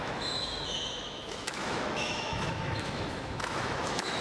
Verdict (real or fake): fake